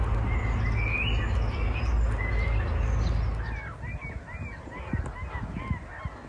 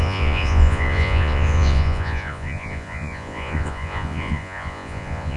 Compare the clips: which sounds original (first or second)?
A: first